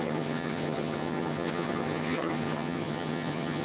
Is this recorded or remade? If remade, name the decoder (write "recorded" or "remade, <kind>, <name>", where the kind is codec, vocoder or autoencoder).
remade, vocoder, HiFi-GAN